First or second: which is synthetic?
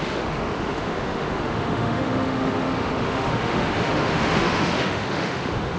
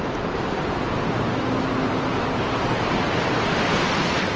first